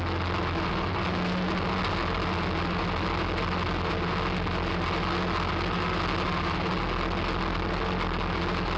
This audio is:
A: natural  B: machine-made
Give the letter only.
A